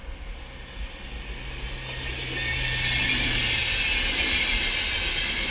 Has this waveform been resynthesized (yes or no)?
no